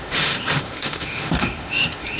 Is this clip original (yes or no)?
no